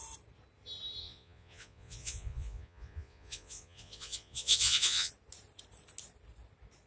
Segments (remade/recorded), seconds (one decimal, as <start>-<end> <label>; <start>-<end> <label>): 0.0-1.0 recorded; 1.0-5.1 remade; 5.1-6.9 recorded

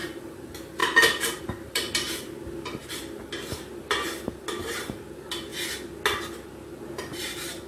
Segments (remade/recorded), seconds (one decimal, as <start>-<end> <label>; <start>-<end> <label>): 0.0-5.5 remade; 5.5-7.0 recorded; 7.0-7.7 remade